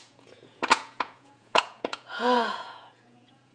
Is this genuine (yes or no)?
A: no